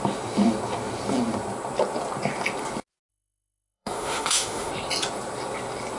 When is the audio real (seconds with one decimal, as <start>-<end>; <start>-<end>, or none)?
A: 0.0-3.1; 4.7-6.0

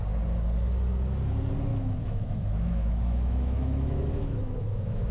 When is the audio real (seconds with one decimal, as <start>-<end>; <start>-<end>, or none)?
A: 0.0-1.7

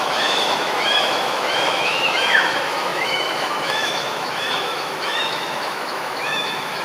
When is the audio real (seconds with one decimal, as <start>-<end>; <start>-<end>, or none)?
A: none